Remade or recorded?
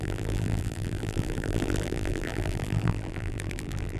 remade